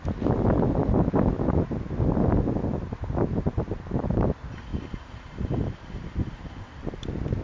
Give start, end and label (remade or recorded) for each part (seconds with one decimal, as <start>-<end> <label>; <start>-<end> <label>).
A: 0.0-7.4 recorded

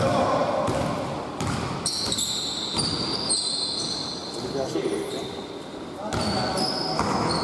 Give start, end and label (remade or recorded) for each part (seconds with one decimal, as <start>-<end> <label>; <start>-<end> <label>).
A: 0.0-7.4 recorded